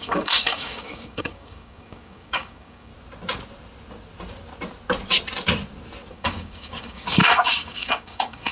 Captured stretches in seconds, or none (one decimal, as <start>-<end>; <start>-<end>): 2.9-6.1